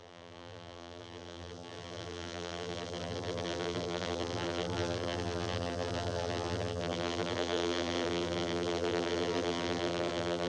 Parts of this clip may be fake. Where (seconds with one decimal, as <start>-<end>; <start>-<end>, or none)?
0.0-10.5